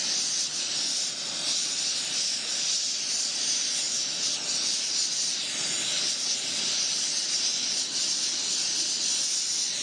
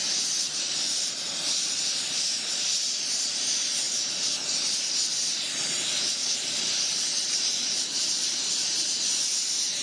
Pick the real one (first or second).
first